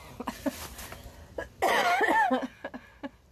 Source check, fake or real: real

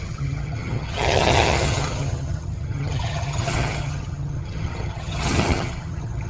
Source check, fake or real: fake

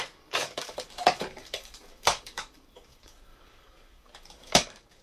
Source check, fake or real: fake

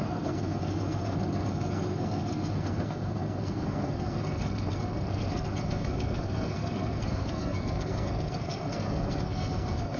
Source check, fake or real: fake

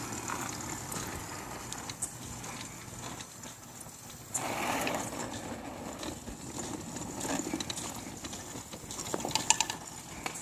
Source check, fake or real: real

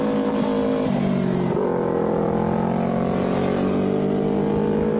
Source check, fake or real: real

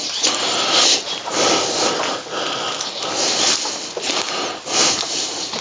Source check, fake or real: real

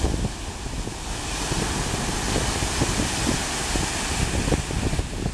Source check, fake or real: real